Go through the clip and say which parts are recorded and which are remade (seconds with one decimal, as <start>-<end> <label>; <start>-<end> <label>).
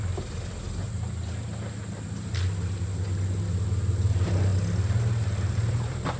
0.0-1.4 remade; 1.4-3.9 recorded; 3.9-4.5 remade; 4.5-5.5 recorded; 5.5-6.2 remade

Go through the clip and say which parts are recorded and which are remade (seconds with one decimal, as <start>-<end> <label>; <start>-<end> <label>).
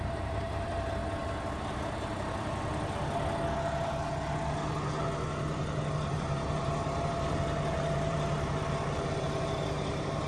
0.0-1.0 remade; 1.0-5.9 recorded; 5.9-10.3 remade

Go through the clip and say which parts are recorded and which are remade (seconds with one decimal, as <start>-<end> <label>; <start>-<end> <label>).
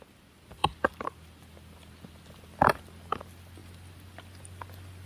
0.0-5.1 recorded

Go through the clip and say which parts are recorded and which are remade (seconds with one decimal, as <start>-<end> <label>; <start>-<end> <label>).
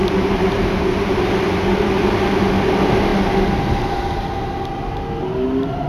0.0-1.2 remade; 1.2-5.9 recorded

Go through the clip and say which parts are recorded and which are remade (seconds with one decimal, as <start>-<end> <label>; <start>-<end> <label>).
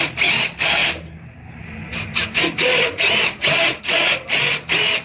0.0-0.8 recorded; 0.8-3.8 remade; 3.8-5.0 recorded